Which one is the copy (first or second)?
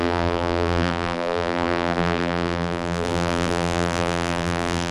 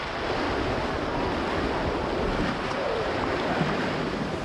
first